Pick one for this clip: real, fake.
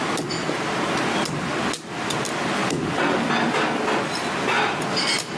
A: real